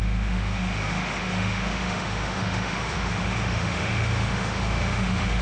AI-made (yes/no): yes